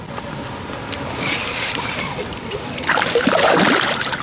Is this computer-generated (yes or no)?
no